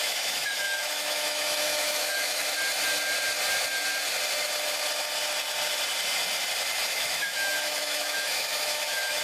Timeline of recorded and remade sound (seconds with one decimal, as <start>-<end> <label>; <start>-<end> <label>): 0.0-2.4 remade; 2.4-6.9 recorded; 6.9-9.2 remade